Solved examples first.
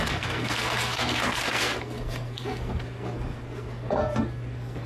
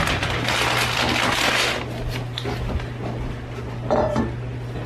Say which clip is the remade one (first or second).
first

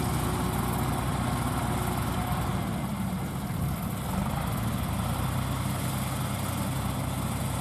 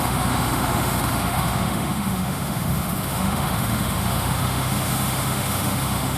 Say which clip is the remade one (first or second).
second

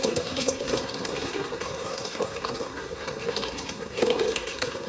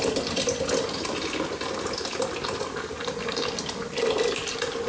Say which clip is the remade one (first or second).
first